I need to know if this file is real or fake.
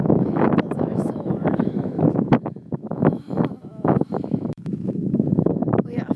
fake